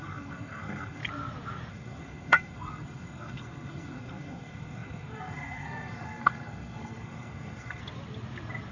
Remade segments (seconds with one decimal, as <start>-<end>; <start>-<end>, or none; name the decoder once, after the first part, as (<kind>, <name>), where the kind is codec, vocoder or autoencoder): 0.0-1.0 (codec, SNAC); 1.7-7.8